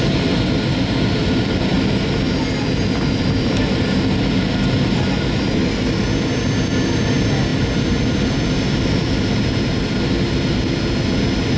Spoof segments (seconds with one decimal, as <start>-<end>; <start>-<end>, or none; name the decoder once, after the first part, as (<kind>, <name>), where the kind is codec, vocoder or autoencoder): none